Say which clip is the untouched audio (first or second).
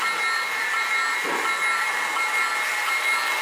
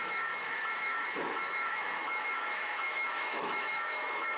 first